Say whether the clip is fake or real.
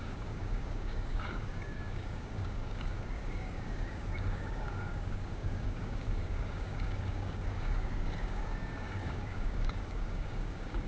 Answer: fake